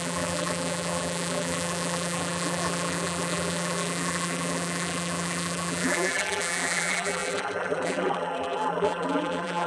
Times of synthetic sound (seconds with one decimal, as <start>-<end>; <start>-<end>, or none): 0.0-9.7